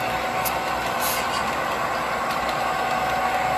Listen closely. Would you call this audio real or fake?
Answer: real